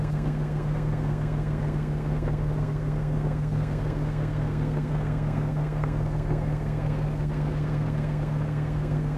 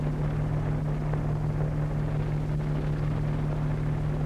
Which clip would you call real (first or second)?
second